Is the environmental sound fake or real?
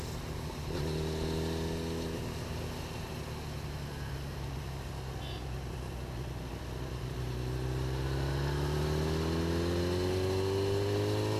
real